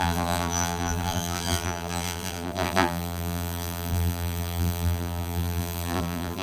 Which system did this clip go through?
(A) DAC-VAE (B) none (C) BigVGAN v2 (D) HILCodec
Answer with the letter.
C